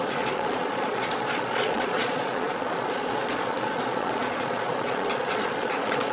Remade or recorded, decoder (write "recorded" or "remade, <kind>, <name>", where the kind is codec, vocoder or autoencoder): remade, vocoder, Vocos